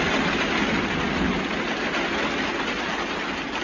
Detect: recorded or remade recorded